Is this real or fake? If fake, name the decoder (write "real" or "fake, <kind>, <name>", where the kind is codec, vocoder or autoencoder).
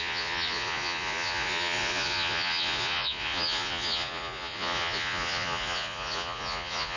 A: fake, vocoder, Vocos